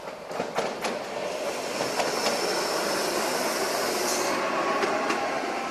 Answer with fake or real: real